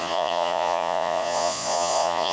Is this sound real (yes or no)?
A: no